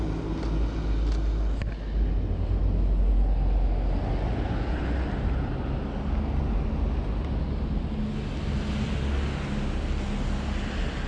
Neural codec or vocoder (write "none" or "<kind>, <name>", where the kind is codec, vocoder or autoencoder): none